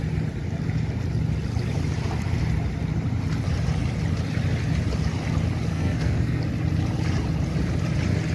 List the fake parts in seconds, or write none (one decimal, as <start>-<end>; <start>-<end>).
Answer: 5.7-6.4

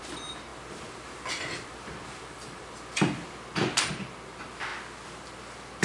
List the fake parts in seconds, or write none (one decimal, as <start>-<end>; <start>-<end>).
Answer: none

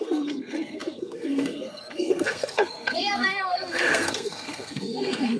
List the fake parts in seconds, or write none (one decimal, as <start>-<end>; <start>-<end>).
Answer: 0.0-5.4

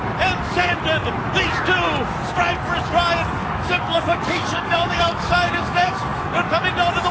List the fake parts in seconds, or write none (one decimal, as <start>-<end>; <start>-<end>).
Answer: 3.4-6.5

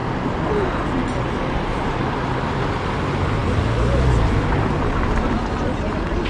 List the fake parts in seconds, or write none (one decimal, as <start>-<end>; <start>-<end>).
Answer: none